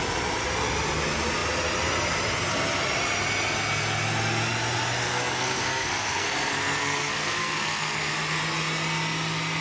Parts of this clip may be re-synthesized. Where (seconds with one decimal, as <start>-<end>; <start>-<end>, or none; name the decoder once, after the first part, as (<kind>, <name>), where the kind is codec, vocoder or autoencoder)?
5.0-8.1 (codec, SNAC)